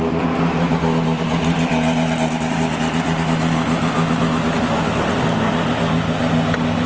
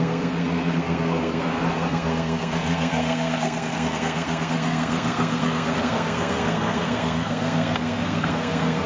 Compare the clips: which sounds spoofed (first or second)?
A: second